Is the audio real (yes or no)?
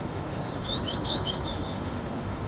no